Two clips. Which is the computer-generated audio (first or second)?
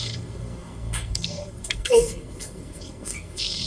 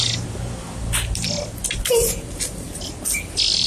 first